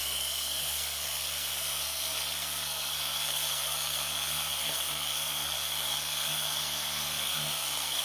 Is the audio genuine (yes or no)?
no